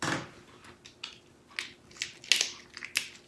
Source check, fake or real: real